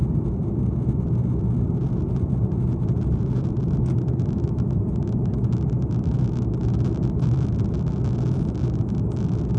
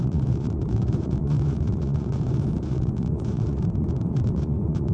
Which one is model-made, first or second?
second